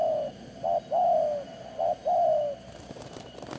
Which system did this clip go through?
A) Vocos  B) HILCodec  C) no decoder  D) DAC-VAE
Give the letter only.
C